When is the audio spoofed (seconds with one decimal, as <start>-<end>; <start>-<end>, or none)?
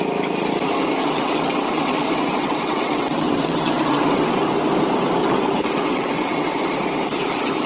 1.0-4.3; 5.2-6.5